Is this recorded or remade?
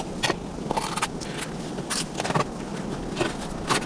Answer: recorded